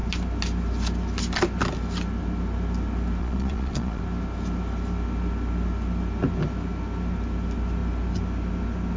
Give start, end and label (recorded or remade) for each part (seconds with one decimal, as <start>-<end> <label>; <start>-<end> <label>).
0.0-3.2 recorded; 3.2-4.0 remade; 4.0-9.0 recorded